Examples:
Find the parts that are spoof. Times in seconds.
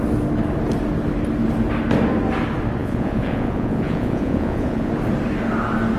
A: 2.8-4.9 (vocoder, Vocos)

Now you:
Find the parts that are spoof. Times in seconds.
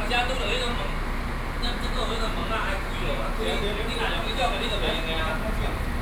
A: 4.2-5.0 (autoencoder, DAC-VAE)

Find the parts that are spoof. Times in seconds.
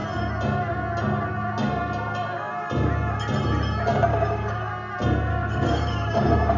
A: 4.1-4.7 (codec, DAC); 5.3-6.6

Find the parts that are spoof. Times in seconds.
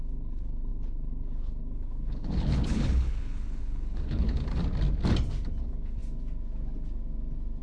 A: 0.0-4.6 (codec, HILCodec); 5.6-6.0